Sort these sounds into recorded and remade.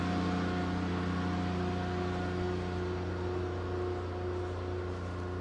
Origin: recorded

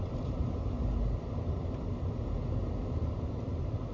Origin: recorded